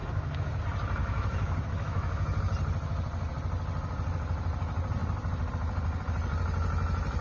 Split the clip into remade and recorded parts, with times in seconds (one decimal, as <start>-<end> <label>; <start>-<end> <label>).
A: 0.0-0.6 remade; 0.6-1.0 recorded; 1.0-2.4 remade; 2.4-7.2 recorded